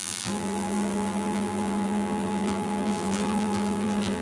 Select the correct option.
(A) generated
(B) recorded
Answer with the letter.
A